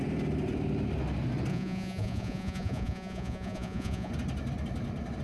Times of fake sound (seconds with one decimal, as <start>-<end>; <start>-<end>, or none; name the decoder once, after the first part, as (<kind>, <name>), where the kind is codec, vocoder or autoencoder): 1.5-4.1 (vocoder, Vocos)